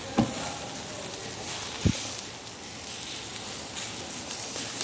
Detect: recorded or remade recorded